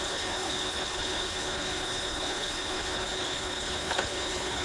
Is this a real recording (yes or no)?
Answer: no